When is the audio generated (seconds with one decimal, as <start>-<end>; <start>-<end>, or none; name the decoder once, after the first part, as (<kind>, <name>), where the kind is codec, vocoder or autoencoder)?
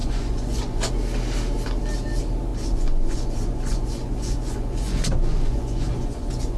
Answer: 0.0-0.9 (vocoder, Vocos); 2.5-6.6